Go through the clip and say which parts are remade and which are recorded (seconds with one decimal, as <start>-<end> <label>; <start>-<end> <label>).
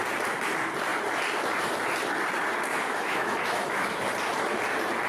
0.0-2.7 recorded; 2.7-4.0 remade; 4.0-5.1 recorded